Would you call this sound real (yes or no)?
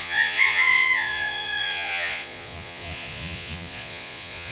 no